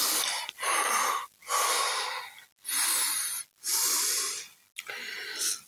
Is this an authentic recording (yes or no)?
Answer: yes